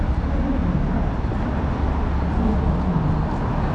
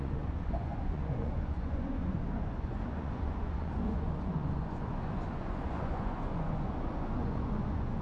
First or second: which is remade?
second